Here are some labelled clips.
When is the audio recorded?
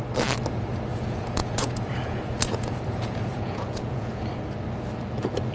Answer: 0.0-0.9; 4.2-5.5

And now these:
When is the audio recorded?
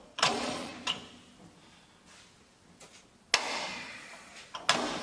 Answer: 0.7-3.7; 4.3-5.0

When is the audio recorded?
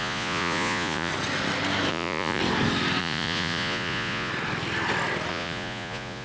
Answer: 1.1-1.9; 2.4-3.0; 4.3-5.3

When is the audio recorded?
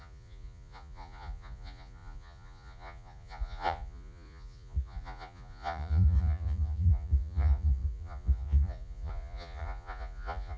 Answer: none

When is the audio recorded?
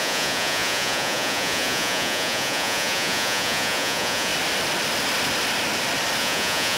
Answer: 4.3-6.2